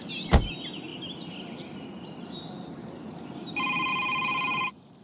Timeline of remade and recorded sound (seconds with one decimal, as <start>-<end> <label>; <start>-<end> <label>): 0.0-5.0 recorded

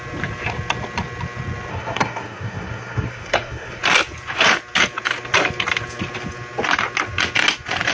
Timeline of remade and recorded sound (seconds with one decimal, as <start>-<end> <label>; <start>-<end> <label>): 0.0-1.7 recorded; 1.7-3.8 remade; 3.8-7.9 recorded

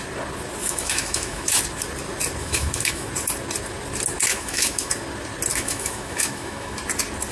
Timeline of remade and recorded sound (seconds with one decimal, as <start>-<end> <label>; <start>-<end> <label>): 0.0-0.6 recorded; 0.6-1.6 remade; 1.6-2.4 recorded; 2.4-3.1 remade; 3.1-4.3 recorded; 4.3-4.9 remade; 4.9-5.5 recorded; 5.5-6.8 remade; 6.8-7.3 recorded

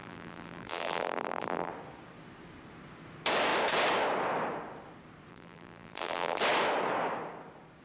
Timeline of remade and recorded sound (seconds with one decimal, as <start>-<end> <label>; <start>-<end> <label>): 0.0-1.7 remade; 1.7-5.3 recorded; 5.3-6.4 remade; 6.4-7.8 recorded

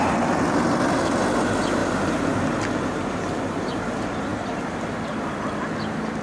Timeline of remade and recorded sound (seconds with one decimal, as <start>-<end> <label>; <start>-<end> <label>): 0.0-1.8 recorded; 1.8-2.4 remade; 2.4-2.9 recorded; 2.9-3.7 remade; 3.7-6.2 recorded

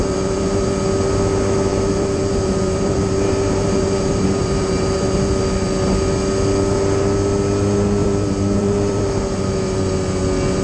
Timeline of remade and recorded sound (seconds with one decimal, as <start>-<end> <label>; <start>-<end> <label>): 0.0-0.8 remade; 0.8-1.7 recorded; 1.7-5.3 remade; 5.3-8.0 recorded; 8.0-9.8 remade; 9.8-10.6 recorded

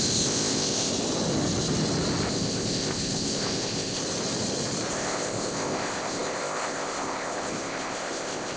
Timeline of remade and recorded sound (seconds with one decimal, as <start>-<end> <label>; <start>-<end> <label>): 0.0-0.9 remade; 0.9-2.3 recorded; 2.3-4.0 remade; 4.0-4.9 recorded; 4.9-8.6 remade